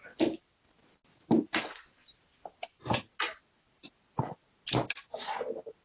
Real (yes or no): yes